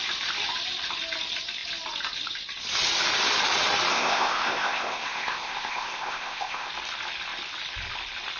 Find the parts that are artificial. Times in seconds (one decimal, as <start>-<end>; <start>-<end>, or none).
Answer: 3.9-6.7